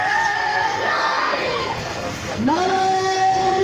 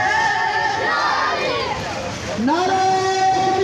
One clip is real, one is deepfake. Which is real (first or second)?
second